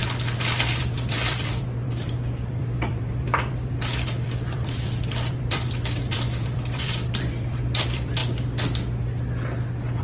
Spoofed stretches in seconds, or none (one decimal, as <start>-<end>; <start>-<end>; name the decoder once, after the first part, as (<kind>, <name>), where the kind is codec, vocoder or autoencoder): 0.8-8.2 (vocoder, BigVGAN v2)